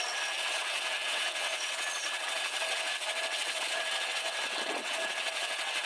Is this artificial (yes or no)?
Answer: yes